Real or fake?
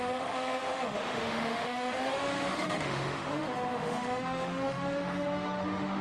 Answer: fake